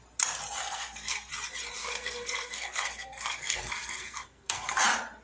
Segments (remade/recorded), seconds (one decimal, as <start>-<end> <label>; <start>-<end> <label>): 0.0-0.6 recorded; 0.6-1.3 remade; 1.3-1.8 recorded; 1.8-4.8 remade; 4.8-5.2 recorded